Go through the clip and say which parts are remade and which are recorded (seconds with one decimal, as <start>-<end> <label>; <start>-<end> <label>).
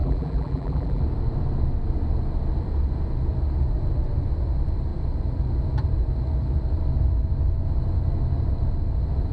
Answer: 0.0-1.0 remade; 1.0-9.3 recorded